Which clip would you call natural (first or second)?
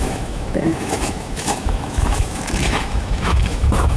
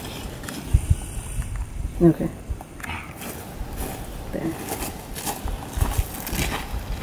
second